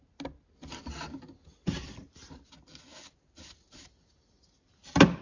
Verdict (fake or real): real